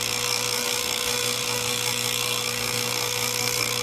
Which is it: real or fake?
fake